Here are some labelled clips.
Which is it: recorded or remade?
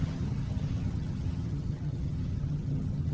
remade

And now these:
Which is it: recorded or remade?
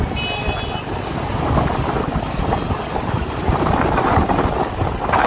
recorded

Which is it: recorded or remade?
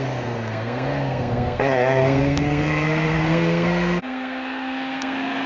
remade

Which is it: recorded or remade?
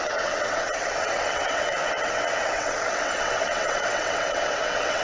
remade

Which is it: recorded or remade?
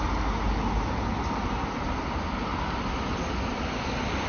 recorded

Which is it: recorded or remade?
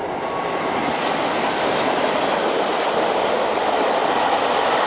recorded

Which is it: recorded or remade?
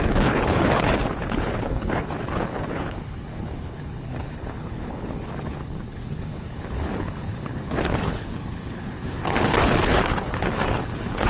remade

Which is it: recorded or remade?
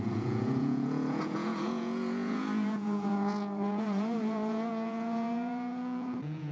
remade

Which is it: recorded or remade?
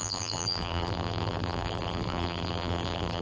remade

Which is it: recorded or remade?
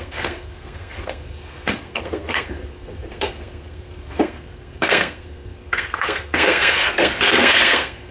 remade